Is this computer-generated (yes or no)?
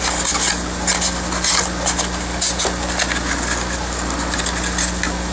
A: no